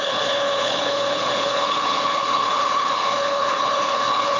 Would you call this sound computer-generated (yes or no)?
yes